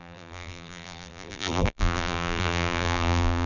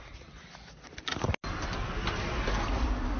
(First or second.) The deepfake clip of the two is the first